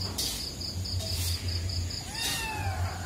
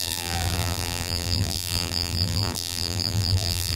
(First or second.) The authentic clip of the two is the first